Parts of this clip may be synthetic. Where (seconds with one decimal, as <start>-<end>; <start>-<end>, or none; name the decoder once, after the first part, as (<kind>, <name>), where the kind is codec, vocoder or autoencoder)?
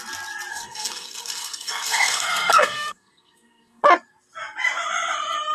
0.5-3.8 (codec, SNAC)